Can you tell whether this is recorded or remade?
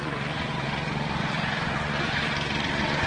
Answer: remade